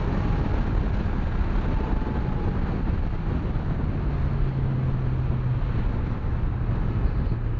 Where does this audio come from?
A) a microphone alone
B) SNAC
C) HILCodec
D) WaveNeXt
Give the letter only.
A